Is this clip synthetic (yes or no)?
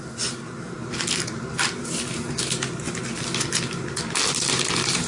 no